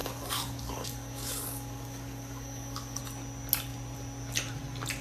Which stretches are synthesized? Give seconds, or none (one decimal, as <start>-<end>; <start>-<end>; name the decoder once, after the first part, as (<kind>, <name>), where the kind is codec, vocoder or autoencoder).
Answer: 0.0-3.0 (codec, DAC)